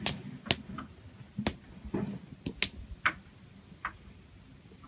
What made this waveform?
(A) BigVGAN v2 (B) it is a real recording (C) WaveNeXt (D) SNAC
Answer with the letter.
B